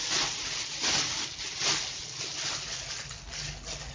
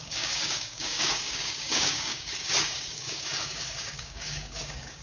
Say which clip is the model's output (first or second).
second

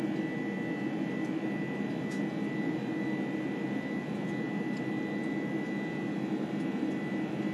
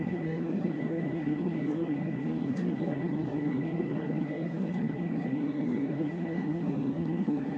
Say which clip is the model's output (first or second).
second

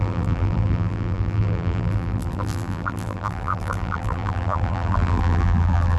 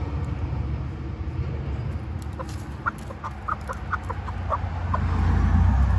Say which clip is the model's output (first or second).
first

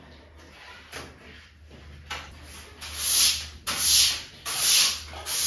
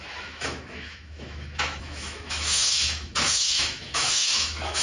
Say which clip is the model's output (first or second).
second